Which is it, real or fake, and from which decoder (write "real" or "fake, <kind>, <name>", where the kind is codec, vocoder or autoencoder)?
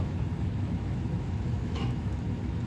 fake, autoencoder, DAC-VAE